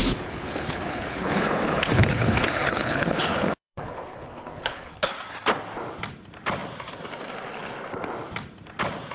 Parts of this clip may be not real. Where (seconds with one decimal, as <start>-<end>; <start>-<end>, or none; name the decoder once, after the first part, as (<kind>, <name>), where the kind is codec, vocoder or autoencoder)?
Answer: 0.0-5.1 (codec, HILCodec)